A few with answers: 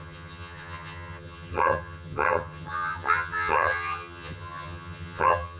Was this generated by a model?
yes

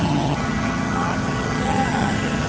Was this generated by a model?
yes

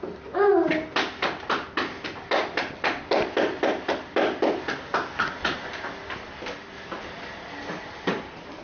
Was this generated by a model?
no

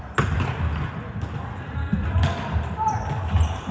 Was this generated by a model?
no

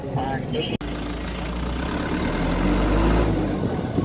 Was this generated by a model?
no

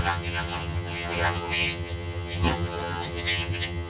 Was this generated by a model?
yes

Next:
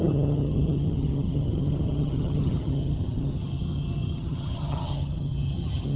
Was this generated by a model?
yes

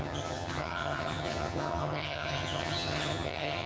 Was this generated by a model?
yes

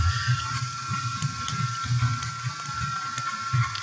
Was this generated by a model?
no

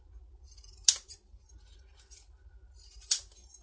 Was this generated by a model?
no